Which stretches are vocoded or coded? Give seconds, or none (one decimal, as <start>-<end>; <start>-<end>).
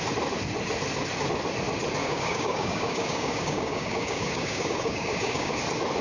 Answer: 2.0-5.6